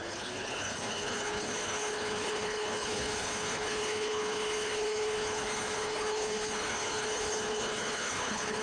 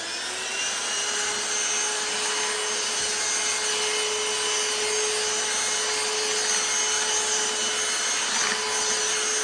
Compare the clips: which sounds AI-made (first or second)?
first